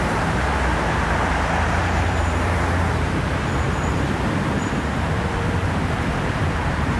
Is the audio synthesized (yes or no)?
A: yes